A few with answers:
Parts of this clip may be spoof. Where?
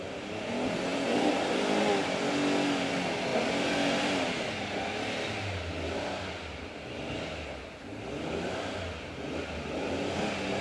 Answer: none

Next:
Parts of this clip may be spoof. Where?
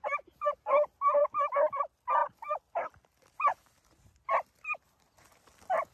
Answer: none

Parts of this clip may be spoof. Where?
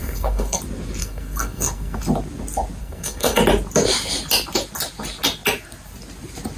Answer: 0.0-0.6 (codec, SNAC); 1.0-2.0; 2.8-3.4